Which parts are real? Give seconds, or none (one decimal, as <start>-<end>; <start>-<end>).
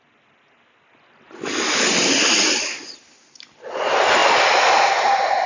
0.0-5.5